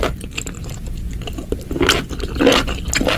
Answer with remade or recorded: recorded